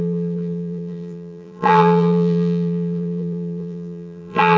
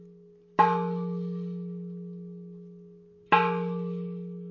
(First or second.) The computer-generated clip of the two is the first